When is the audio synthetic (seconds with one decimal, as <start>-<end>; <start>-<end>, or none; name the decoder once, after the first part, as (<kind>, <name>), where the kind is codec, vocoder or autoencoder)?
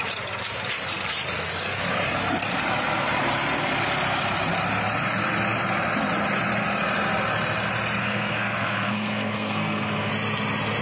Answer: 8.0-10.1 (codec, SNAC)